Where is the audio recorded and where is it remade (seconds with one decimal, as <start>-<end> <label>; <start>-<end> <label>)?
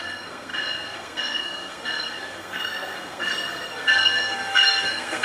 0.0-5.2 remade